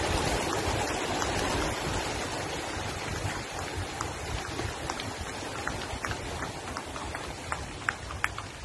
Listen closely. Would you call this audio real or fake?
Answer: real